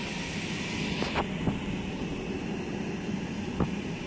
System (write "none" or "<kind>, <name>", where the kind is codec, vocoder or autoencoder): none